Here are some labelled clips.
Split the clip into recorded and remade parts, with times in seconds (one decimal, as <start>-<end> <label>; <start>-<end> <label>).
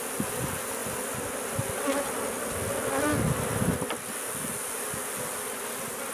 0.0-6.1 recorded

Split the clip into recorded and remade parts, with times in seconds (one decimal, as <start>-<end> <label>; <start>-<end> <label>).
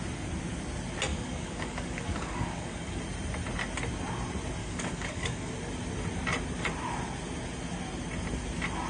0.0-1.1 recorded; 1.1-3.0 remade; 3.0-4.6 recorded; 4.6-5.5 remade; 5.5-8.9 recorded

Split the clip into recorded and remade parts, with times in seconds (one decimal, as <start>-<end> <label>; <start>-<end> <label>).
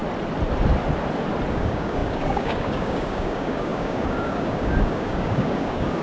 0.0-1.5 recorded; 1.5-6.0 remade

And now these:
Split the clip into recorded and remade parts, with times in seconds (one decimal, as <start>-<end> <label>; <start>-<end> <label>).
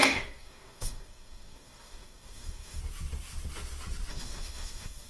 0.0-2.8 remade; 2.8-4.1 recorded; 4.1-5.1 remade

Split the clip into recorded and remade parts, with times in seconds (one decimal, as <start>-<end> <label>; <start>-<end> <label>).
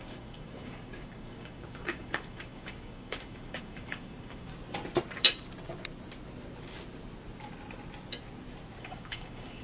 0.0-4.5 remade; 4.5-8.8 recorded; 8.8-9.6 remade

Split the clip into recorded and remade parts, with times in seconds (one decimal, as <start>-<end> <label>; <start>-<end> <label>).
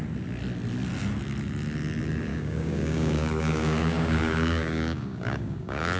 0.0-2.3 recorded; 2.3-6.0 remade